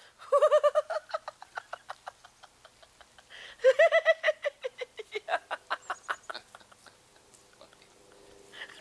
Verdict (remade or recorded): recorded